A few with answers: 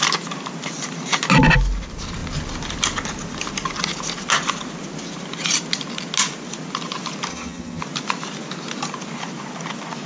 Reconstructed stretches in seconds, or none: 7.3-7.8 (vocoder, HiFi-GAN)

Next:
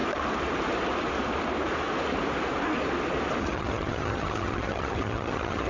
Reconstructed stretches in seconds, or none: 3.4-5.7 (vocoder, HiFi-GAN)

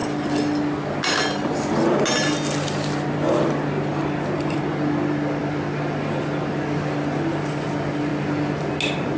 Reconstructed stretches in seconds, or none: none

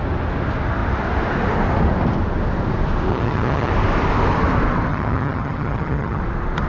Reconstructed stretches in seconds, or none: 3.1-3.7 (vocoder, HiFi-GAN); 4.9-6.2

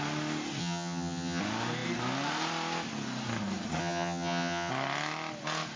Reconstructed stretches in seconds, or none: 0.6-1.4 (vocoder, HiFi-GAN); 3.8-4.7

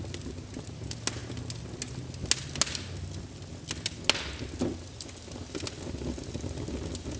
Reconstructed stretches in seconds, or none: none